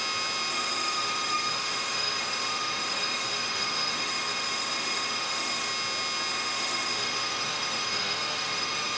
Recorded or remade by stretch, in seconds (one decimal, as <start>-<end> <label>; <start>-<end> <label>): 0.0-0.5 recorded; 0.5-5.7 remade; 5.7-6.3 recorded; 6.3-9.0 remade